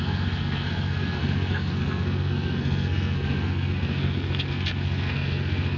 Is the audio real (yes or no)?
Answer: no